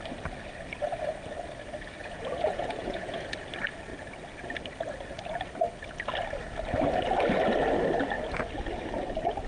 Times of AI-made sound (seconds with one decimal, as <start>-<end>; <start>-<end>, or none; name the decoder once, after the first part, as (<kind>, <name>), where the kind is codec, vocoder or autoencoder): 2.0-3.2 (vocoder, Vocos)